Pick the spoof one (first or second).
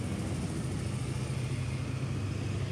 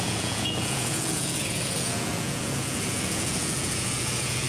second